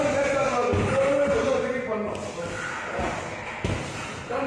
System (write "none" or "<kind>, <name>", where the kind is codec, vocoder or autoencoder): none